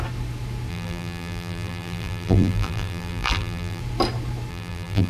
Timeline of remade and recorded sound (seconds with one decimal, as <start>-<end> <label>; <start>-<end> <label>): 0.0-0.7 recorded; 0.7-3.8 remade; 3.8-4.5 recorded; 4.5-5.1 remade